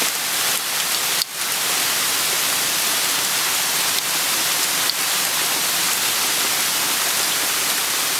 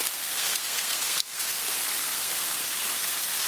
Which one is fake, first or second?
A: second